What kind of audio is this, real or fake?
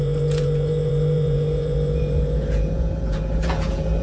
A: fake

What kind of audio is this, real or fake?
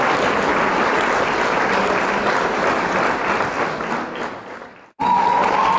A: real